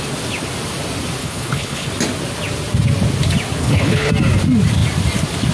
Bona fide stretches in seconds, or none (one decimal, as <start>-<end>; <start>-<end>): 0.0-1.2; 1.9-3.6; 4.1-5.5